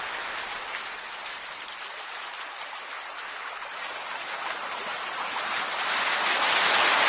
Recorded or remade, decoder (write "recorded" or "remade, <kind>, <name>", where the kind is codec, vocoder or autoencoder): recorded